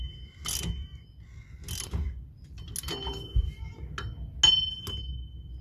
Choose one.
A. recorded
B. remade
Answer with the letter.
A